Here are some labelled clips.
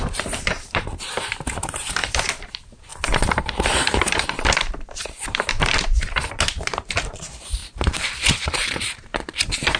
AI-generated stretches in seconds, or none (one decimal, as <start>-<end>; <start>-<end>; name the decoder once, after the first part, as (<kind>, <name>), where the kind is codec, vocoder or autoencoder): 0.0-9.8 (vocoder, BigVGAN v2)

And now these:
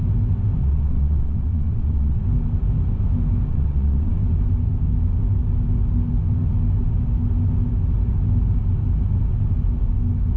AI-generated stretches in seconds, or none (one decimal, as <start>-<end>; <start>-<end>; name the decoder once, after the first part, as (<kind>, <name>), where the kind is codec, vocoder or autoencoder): 0.6-2.2 (vocoder, WaveNeXt); 3.5-4.1

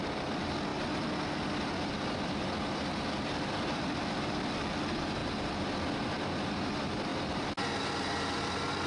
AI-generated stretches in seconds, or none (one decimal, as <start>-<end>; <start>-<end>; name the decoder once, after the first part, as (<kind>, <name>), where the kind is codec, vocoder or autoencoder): 0.0-0.7 (vocoder, BigVGAN v2); 2.8-5.2; 6.5-7.1; 7.8-8.9

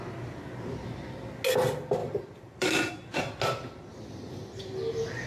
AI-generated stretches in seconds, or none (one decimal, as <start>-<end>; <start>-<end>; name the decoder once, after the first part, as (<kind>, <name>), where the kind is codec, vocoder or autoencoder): 2.0-2.9 (vocoder, BigVGAN v2)